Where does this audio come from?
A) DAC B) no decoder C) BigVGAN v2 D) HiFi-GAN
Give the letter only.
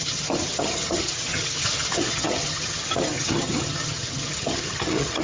D